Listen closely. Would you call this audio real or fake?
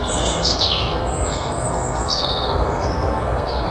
fake